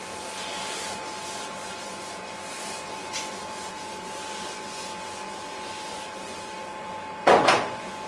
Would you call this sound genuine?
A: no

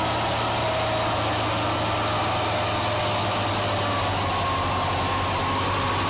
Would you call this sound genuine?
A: yes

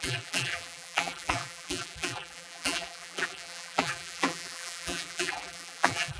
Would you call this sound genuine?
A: no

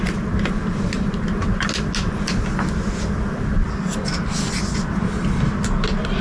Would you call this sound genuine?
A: yes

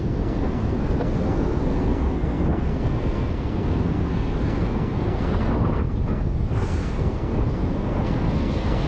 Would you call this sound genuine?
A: no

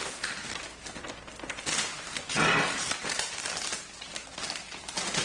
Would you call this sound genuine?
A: yes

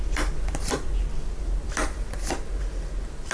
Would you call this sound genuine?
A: yes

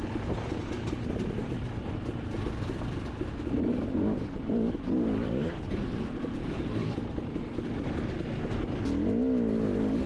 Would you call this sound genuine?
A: yes